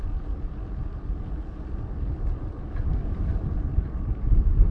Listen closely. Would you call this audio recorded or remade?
recorded